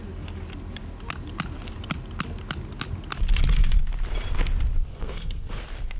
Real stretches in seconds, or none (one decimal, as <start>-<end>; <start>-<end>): 0.0-4.9; 5.6-6.0